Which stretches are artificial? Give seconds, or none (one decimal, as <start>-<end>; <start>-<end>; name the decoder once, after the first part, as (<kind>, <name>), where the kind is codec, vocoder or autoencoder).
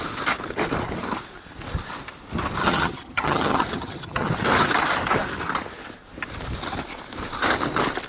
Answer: 2.6-4.3 (vocoder, HiFi-GAN)